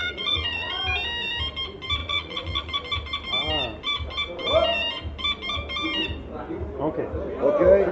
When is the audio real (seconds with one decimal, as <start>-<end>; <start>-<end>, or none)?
0.8-2.0; 2.7-7.9